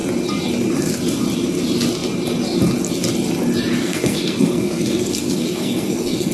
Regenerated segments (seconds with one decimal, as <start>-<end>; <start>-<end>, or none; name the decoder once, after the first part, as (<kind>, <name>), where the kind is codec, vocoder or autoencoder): 3.8-6.3 (codec, SNAC)